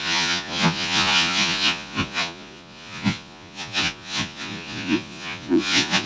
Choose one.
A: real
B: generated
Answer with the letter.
B